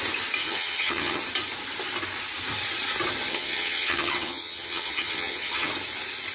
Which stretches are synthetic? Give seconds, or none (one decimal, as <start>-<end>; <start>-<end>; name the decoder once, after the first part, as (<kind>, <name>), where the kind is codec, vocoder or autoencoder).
0.4-1.2 (vocoder, HiFi-GAN); 3.3-5.7